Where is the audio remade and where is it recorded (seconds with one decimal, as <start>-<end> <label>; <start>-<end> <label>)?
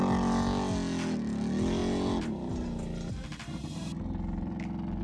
0.0-5.0 recorded